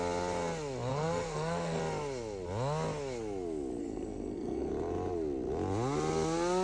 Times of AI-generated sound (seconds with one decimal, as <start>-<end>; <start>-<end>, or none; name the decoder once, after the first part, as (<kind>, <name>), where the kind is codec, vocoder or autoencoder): 0.9-1.8 (codec, SNAC); 3.8-4.7